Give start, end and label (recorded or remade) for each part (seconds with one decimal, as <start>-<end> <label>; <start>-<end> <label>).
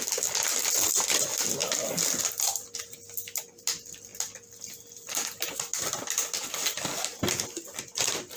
0.0-8.4 recorded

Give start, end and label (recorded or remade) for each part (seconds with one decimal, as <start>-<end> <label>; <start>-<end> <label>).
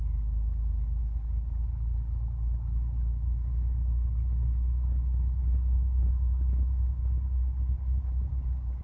0.0-1.0 recorded; 1.0-6.1 remade; 6.1-7.0 recorded; 7.0-8.0 remade; 8.0-8.8 recorded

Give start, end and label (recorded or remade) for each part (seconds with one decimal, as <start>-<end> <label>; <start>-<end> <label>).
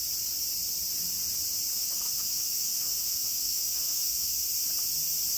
0.0-1.7 recorded; 1.7-4.5 remade; 4.5-5.4 recorded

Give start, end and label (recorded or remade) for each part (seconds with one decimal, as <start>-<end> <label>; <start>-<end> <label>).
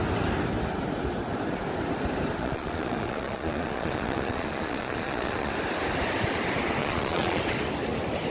0.0-2.4 recorded; 2.4-5.5 remade; 5.5-6.8 recorded; 6.8-7.4 remade; 7.4-8.3 recorded